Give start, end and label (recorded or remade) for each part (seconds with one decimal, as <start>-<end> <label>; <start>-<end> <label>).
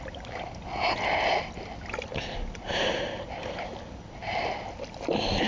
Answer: 0.0-5.5 recorded